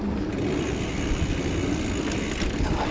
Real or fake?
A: real